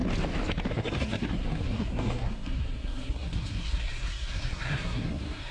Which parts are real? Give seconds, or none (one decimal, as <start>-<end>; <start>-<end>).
0.0-0.7